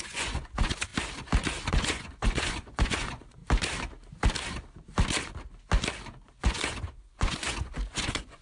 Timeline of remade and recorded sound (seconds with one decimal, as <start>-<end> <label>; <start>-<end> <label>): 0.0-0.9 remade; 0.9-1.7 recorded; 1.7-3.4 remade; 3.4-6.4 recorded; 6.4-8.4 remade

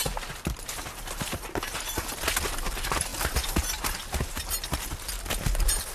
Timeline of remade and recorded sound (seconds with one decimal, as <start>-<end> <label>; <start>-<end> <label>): 0.0-5.9 recorded

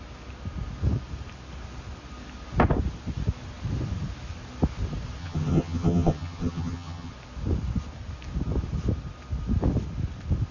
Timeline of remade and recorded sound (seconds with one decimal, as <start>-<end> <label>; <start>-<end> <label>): 0.0-5.2 recorded; 5.2-7.1 remade; 7.1-10.5 recorded

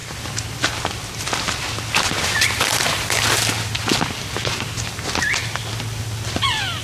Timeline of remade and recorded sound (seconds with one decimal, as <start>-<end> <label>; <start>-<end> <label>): 0.0-0.6 remade; 0.6-6.8 recorded

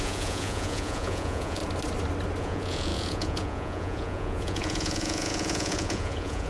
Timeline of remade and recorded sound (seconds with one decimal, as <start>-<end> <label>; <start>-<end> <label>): 0.0-1.6 remade; 1.6-2.4 recorded; 2.4-6.5 remade

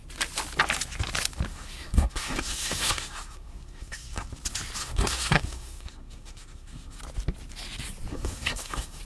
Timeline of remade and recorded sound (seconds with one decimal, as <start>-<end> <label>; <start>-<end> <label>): 0.0-1.5 recorded; 1.5-4.3 remade; 4.3-4.8 recorded; 4.8-7.0 remade; 7.0-8.1 recorded; 8.1-9.0 remade